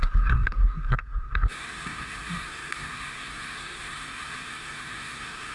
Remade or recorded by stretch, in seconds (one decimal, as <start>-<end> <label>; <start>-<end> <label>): 0.0-5.5 remade